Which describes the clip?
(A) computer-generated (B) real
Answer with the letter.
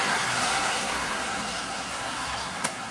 A